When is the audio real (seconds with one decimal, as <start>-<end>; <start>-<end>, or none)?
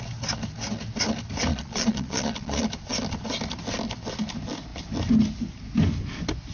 0.0-1.5; 2.6-6.5